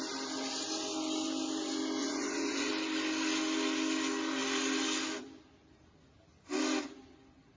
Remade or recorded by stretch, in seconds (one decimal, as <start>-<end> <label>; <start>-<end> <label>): 0.0-2.0 recorded; 2.0-2.7 remade; 2.7-7.6 recorded